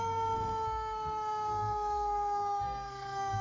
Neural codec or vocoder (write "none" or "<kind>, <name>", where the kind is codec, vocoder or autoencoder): codec, SNAC